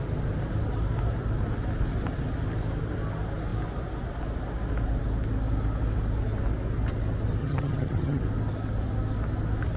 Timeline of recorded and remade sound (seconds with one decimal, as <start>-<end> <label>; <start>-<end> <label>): 0.0-7.4 recorded; 7.4-8.2 remade; 8.2-9.8 recorded